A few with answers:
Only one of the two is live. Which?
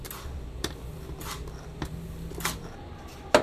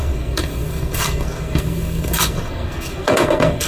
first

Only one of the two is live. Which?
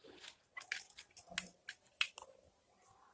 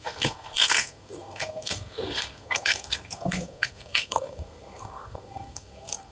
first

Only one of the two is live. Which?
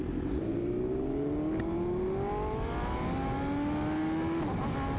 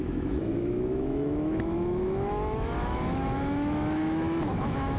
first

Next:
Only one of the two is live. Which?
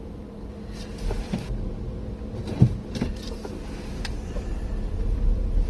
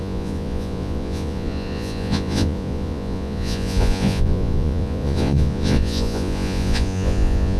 first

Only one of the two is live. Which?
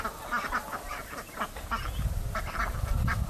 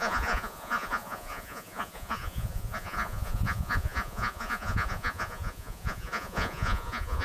first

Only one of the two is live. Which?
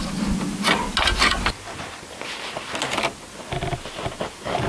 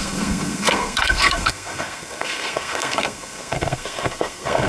first